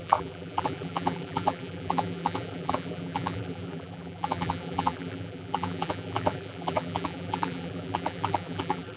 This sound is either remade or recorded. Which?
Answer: remade